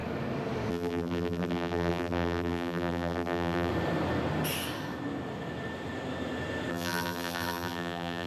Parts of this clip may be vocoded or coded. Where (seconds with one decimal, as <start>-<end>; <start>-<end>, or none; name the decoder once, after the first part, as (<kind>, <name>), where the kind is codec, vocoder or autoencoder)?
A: 0.7-3.7 (vocoder, BigVGAN v2); 6.7-8.3